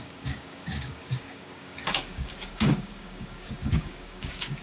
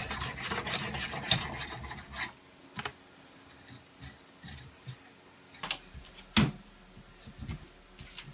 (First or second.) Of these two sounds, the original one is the second